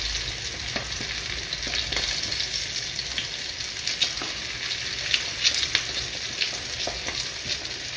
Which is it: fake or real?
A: real